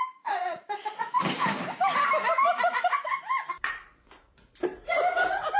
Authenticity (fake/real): fake